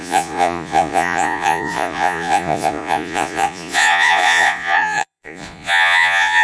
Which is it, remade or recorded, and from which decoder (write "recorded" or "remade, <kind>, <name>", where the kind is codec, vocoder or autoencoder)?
remade, vocoder, Vocos